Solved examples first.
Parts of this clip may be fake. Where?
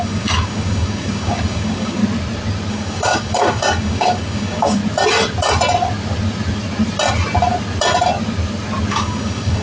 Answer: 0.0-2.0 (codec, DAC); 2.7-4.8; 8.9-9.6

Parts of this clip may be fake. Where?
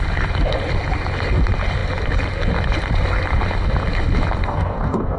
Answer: 4.4-5.2 (codec, DAC)